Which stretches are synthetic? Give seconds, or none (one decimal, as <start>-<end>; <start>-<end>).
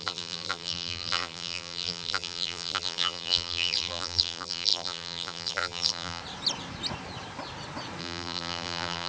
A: 0.0-6.2; 8.0-9.1